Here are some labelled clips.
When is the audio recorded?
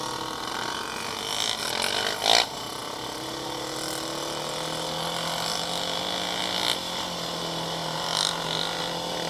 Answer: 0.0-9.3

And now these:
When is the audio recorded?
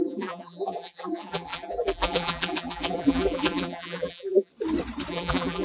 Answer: 4.5-5.1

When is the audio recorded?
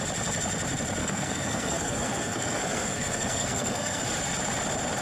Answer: 0.0-1.0; 4.0-5.0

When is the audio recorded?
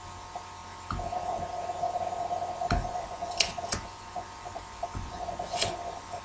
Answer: 0.0-2.9